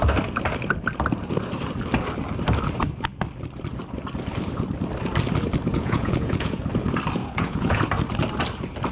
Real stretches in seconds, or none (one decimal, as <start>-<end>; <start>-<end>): 0.0-5.7; 6.6-7.2; 7.8-8.9